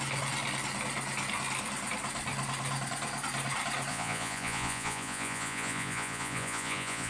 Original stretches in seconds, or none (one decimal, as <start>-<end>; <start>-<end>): 0.0-3.9